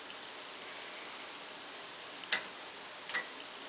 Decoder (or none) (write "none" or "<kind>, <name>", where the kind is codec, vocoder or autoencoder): none